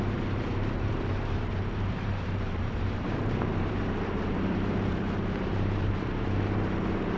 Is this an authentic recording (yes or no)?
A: no